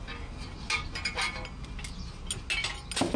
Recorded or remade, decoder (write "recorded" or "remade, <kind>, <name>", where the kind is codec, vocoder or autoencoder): recorded